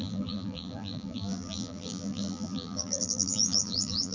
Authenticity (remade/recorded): remade